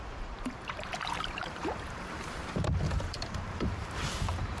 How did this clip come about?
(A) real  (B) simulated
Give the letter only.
B